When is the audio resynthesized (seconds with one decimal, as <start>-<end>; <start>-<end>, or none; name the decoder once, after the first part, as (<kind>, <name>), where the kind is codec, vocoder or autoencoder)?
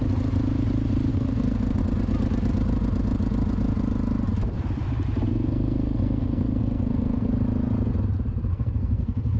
1.1-1.8 (codec, SNAC); 5.3-7.3; 8.5-9.4